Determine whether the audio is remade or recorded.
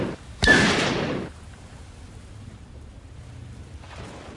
recorded